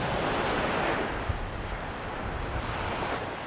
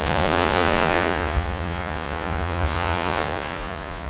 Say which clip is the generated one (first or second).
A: second